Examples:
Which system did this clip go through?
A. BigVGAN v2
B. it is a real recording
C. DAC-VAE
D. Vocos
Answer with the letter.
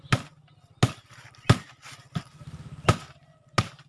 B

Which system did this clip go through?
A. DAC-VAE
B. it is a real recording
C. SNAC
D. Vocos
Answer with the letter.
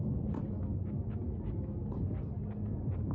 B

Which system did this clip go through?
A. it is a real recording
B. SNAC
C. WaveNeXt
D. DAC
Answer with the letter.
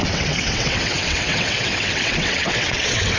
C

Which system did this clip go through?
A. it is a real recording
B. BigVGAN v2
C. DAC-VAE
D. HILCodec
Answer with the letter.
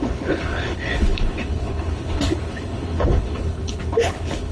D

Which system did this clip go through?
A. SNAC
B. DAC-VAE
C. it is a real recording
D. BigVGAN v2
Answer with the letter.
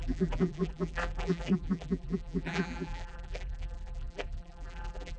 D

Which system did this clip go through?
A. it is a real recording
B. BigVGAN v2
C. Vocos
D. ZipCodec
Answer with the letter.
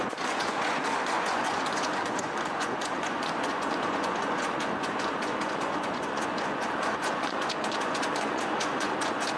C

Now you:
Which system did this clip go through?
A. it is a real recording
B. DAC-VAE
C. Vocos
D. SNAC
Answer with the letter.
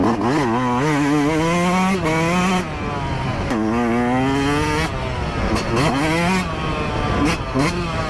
A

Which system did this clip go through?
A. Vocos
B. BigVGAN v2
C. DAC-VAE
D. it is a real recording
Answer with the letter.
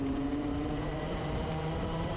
B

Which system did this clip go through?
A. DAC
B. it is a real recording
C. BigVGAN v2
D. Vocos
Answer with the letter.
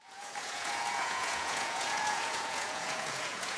D